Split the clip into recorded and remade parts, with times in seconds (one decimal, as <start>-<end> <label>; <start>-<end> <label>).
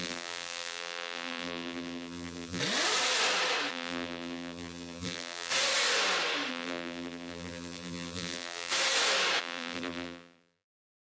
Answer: 0.0-2.6 remade; 2.6-3.7 recorded; 3.7-5.5 remade; 5.5-6.5 recorded; 6.5-8.7 remade; 8.7-9.4 recorded; 9.4-11.1 remade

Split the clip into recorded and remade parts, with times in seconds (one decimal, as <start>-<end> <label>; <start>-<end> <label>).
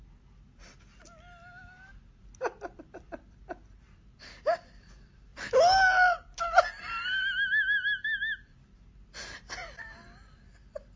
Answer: 0.0-11.0 recorded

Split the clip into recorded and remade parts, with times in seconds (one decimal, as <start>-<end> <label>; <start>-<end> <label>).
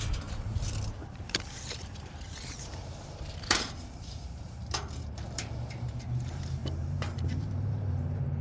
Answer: 0.0-8.4 remade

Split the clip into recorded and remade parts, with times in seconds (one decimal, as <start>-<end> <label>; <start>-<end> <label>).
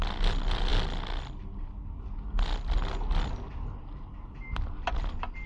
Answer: 0.0-5.5 recorded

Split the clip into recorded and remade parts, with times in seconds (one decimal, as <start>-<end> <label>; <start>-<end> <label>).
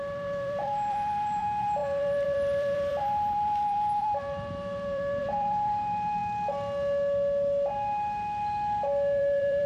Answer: 0.0-6.2 remade; 6.2-9.2 recorded; 9.2-9.7 remade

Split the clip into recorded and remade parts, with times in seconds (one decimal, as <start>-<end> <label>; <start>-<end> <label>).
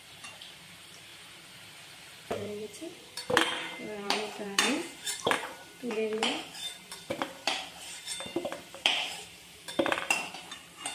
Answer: 0.0-10.9 remade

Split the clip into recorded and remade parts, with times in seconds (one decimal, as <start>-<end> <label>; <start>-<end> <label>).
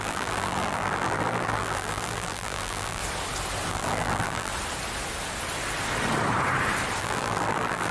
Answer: 0.0-3.0 remade; 3.0-3.7 recorded; 3.7-4.5 remade; 4.5-7.0 recorded; 7.0-7.9 remade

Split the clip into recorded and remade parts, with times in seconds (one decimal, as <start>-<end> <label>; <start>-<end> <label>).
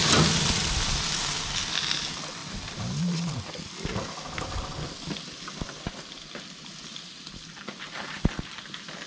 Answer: 0.0-2.4 recorded; 2.4-3.4 remade; 3.4-9.1 recorded